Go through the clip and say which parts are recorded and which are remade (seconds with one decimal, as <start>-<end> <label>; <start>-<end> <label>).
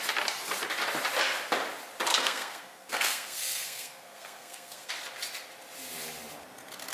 0.0-2.1 recorded; 2.1-4.9 remade; 4.9-6.9 recorded